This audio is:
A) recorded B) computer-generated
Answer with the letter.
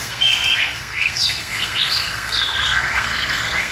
B